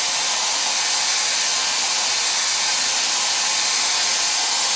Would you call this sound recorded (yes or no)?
yes